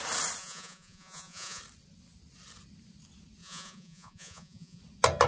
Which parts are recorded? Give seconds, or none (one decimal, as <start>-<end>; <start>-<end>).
0.0-0.4; 1.6-3.4; 4.8-5.3